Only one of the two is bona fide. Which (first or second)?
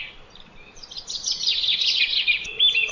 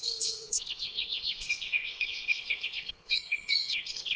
first